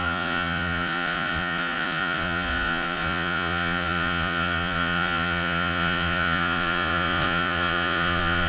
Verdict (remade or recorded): remade